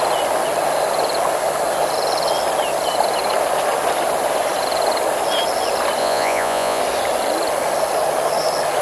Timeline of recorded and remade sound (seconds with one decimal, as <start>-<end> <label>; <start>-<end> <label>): 0.0-6.0 recorded; 6.0-6.8 remade; 6.8-8.8 recorded